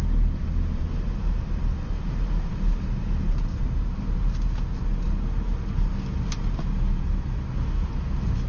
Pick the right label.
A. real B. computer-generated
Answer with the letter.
A